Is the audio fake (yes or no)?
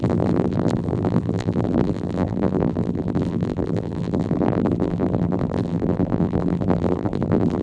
yes